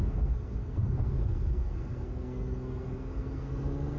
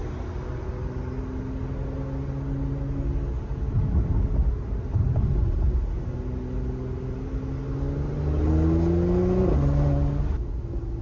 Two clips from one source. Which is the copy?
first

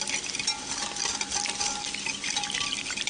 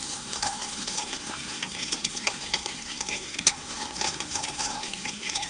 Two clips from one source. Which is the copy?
second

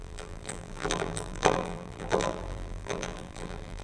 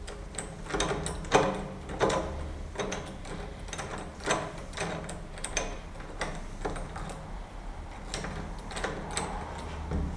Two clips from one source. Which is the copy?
first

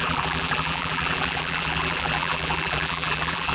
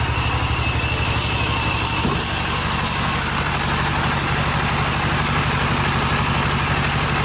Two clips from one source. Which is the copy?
first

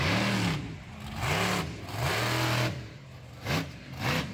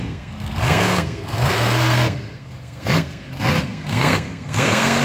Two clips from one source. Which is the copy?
second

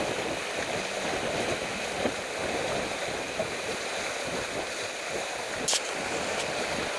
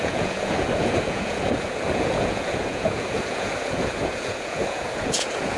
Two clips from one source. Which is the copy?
second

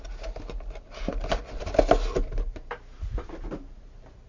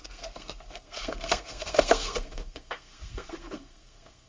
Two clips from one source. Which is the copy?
second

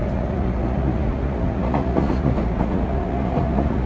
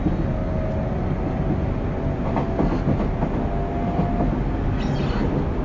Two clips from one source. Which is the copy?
first